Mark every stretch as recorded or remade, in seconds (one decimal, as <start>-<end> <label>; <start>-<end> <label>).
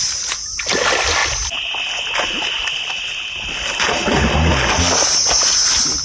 0.0-6.0 recorded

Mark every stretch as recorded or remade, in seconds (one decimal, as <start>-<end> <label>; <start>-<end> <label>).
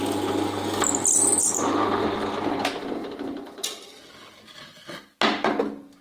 0.0-6.0 recorded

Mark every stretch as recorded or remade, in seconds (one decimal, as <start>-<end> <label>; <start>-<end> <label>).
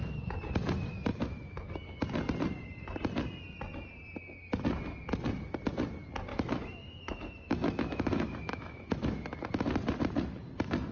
0.0-1.1 recorded; 1.1-1.7 remade; 1.7-6.3 recorded; 6.3-9.7 remade; 9.7-10.9 recorded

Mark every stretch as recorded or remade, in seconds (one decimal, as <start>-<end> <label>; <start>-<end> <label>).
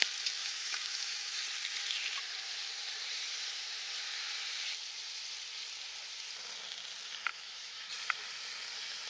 0.0-0.4 recorded; 0.4-1.4 remade; 1.4-7.3 recorded; 7.3-7.9 remade; 7.9-9.1 recorded